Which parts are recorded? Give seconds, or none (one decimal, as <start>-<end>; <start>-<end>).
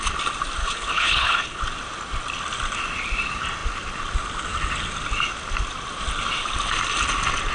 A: 0.0-0.6; 1.6-7.5